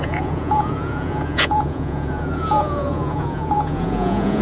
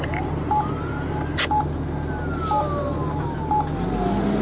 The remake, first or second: first